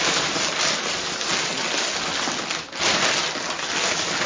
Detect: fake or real real